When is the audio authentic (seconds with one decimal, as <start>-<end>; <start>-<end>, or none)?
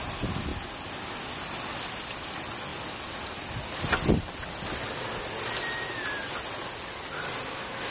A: 0.0-7.9